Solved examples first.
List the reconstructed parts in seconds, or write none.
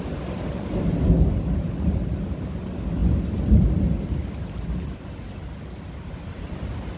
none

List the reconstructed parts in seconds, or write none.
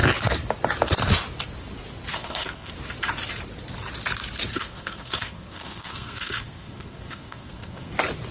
2.1-2.7 (codec, SNAC); 4.5-7.9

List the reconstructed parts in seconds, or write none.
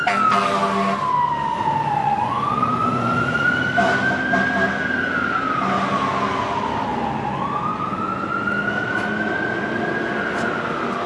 2.0-3.5 (vocoder, Vocos)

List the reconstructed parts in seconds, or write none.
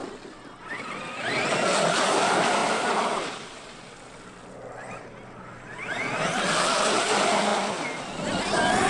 none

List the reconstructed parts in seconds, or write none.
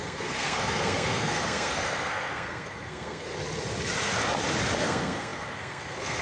0.0-3.3 (codec, SNAC); 4.8-6.2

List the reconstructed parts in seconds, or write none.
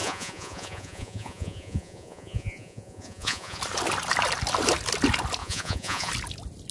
0.0-3.6 (vocoder, Vocos); 5.4-6.1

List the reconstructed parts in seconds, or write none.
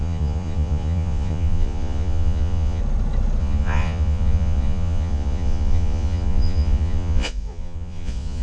0.0-2.8 (vocoder, Vocos); 3.4-8.4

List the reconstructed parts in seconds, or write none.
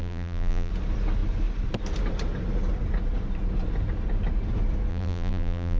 0.0-0.7 (vocoder, BigVGAN v2); 4.9-5.8